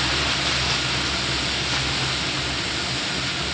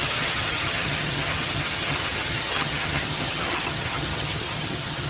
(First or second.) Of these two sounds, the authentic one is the first